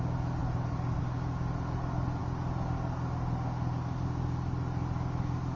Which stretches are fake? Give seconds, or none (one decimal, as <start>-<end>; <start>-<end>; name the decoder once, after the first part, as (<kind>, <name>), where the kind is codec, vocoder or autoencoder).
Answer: none